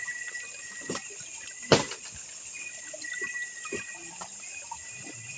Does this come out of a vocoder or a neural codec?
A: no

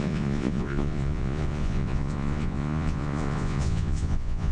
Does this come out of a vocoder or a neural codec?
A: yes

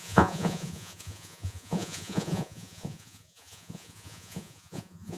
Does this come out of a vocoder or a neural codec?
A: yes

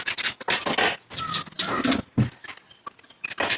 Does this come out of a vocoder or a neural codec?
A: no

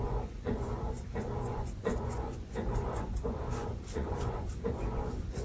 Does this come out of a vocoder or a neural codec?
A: yes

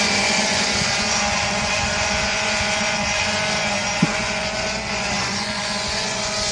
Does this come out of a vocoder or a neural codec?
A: yes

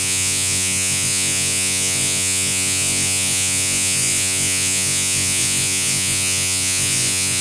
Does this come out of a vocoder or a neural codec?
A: yes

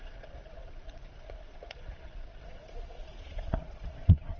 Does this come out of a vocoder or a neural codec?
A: yes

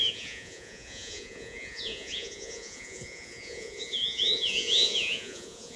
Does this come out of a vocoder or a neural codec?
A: yes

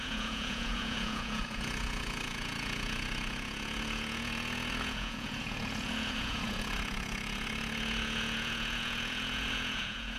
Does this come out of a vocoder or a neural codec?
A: yes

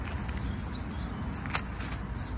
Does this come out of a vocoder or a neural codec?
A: no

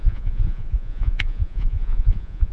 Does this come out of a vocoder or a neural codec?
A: yes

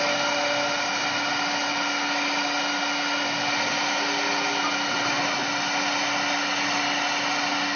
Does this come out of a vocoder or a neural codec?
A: no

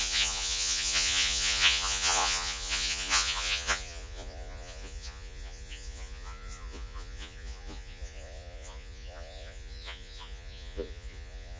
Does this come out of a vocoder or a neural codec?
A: yes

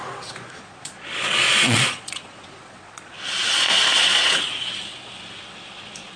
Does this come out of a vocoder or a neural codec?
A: yes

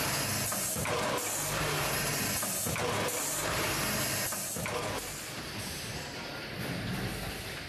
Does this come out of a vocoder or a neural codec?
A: no